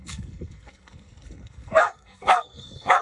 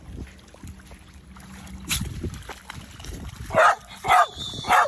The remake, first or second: first